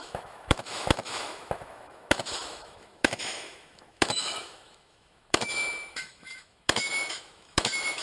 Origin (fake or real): fake